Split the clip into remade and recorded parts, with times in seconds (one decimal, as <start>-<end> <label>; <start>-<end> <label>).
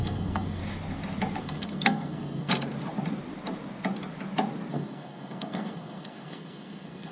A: 0.0-0.6 remade; 0.6-1.4 recorded; 1.4-2.5 remade; 2.5-4.7 recorded; 4.7-7.1 remade